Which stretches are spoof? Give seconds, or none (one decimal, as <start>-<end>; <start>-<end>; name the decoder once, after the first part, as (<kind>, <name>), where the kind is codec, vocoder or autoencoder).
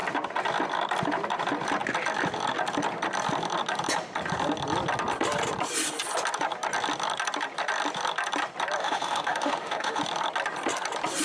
8.8-10.0 (autoencoder, DAC-VAE)